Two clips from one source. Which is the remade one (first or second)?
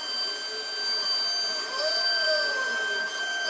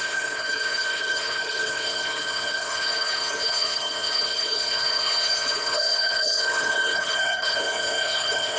second